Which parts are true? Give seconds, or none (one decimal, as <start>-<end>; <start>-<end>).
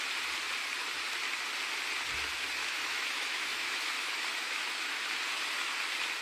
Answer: 0.0-2.6; 5.1-6.2